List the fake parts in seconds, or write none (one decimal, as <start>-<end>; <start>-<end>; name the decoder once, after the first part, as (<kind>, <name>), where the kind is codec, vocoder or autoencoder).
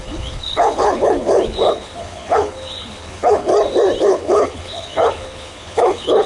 0.0-3.5 (codec, HILCodec); 4.0-6.3